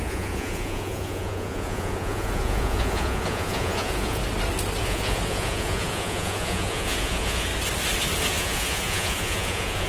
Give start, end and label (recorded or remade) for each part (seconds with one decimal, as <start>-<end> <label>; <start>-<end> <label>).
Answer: 0.0-4.2 remade; 4.2-4.8 recorded; 4.8-7.5 remade; 7.5-8.3 recorded; 8.3-9.9 remade